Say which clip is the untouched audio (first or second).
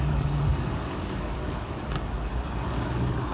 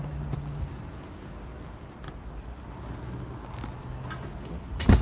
second